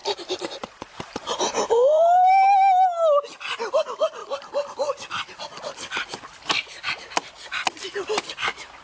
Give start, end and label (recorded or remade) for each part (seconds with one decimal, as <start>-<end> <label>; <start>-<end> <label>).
0.0-2.6 remade; 2.6-8.8 recorded